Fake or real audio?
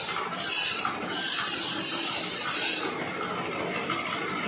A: real